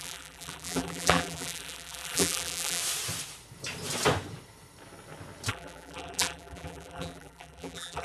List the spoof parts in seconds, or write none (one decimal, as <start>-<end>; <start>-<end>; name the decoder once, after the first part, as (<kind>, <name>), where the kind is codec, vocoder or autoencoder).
0.0-2.8 (vocoder, BigVGAN v2); 5.5-8.0